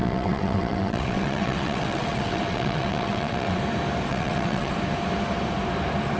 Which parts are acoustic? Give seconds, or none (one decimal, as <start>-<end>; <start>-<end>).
3.6-4.1; 4.7-6.2